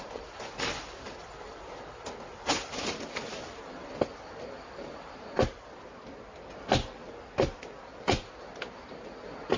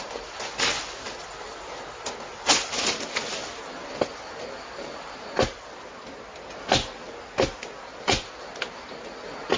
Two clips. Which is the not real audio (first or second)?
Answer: first